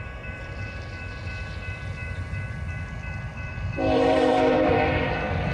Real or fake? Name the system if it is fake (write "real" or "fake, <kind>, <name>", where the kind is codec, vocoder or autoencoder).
fake, vocoder, BigVGAN v2